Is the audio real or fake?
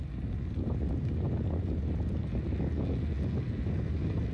real